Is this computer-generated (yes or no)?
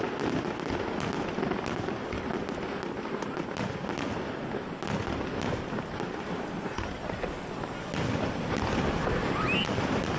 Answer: no